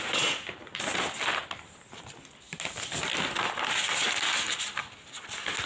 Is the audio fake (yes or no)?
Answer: no